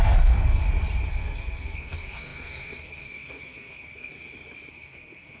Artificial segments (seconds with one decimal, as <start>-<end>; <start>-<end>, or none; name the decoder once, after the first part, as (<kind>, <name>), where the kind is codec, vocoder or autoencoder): 0.0-0.6 (codec, SNAC); 1.1-4.1; 4.7-5.4